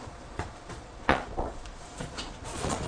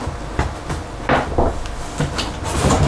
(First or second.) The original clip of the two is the second